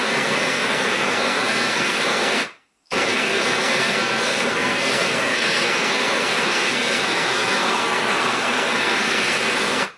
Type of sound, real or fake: fake